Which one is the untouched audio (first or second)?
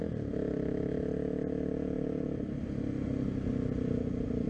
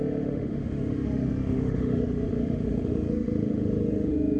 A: first